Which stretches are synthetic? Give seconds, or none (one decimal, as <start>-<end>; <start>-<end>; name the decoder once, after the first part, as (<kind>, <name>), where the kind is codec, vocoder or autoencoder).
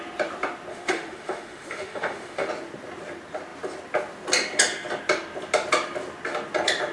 0.7-2.5 (autoencoder, DAC-VAE)